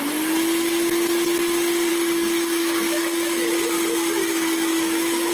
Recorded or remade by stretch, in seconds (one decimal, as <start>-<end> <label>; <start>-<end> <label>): 0.0-1.9 recorded; 1.9-5.3 remade

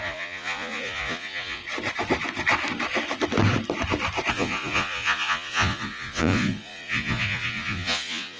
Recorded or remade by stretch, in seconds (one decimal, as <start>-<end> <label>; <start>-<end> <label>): 0.0-1.6 remade; 1.6-4.3 recorded; 4.3-8.4 remade

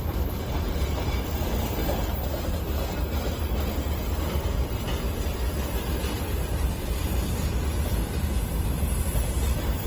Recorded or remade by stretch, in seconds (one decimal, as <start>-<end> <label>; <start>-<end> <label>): 0.0-1.8 remade; 1.8-2.9 recorded; 2.9-9.9 remade

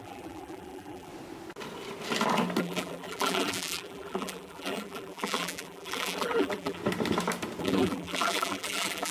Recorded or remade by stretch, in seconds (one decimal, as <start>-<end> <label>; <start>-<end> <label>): 0.0-1.1 remade; 1.1-2.6 recorded; 2.6-6.8 remade; 6.8-7.6 recorded; 7.6-9.1 remade

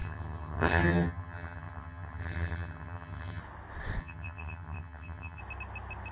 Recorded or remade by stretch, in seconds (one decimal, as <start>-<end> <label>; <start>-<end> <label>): 0.0-3.4 remade; 3.4-4.0 recorded; 4.0-5.4 remade; 5.4-6.1 recorded

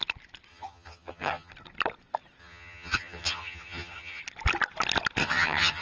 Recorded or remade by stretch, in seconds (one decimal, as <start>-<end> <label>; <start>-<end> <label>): 0.0-0.5 recorded; 0.5-1.5 remade; 1.5-2.4 recorded; 2.4-4.2 remade; 4.2-5.2 recorded; 5.2-5.8 remade

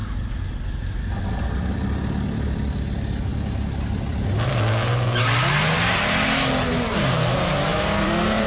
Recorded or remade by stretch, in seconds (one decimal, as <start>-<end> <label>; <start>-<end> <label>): 0.0-3.3 recorded; 3.3-4.5 remade; 4.5-7.7 recorded; 7.7-8.5 remade

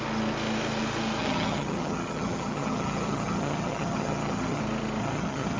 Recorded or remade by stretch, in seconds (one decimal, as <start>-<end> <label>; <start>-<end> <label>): 0.0-1.2 recorded; 1.2-4.6 remade; 4.6-5.0 recorded; 5.0-5.6 remade